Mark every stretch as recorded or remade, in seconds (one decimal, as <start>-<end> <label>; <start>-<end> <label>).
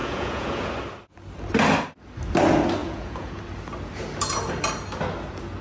0.0-0.7 remade; 0.7-2.8 recorded; 2.8-3.4 remade; 3.4-5.6 recorded